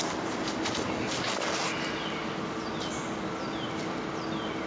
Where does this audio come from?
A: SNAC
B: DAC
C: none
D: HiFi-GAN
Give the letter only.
C